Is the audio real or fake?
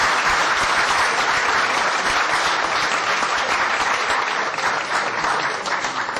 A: real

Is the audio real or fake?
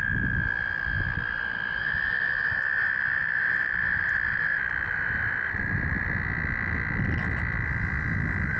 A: real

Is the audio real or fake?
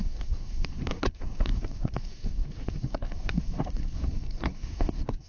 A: fake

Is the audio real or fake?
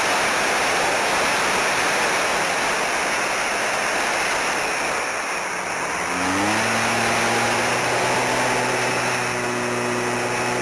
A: real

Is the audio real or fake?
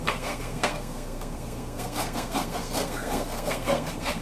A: fake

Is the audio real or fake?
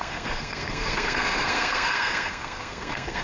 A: fake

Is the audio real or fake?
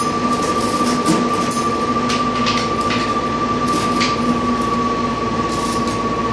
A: real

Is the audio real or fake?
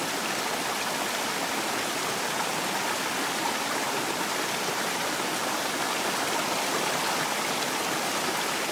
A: real